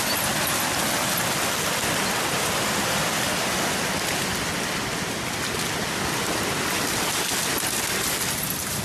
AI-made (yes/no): no